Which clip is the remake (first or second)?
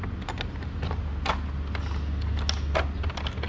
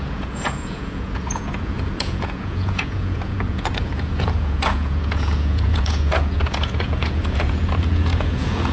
second